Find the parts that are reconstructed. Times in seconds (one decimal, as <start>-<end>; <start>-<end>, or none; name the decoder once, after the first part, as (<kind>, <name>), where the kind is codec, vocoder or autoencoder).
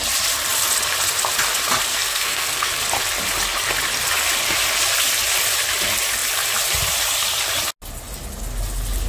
1.9-2.7 (codec, SNAC)